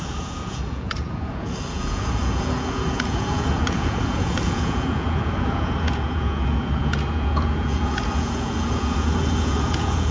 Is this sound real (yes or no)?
no